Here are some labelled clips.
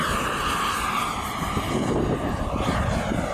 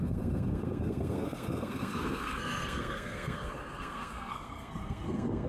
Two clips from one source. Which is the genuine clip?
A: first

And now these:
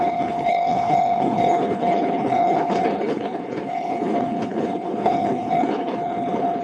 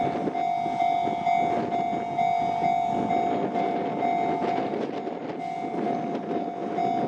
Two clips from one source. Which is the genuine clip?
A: second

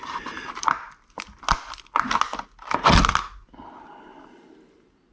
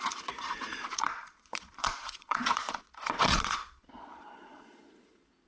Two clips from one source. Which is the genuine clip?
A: first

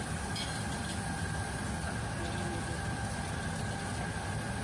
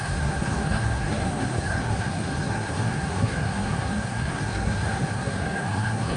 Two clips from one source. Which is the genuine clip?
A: first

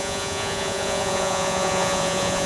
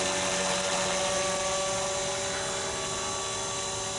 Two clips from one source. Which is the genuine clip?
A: second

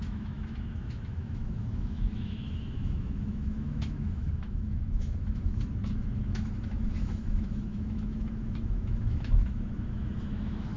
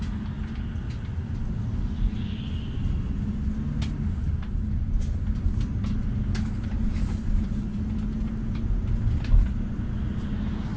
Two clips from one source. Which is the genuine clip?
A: second